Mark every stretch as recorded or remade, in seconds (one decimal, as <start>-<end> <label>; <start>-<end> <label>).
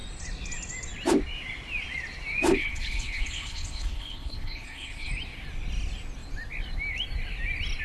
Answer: 0.0-2.5 recorded; 2.5-5.1 remade; 5.1-7.8 recorded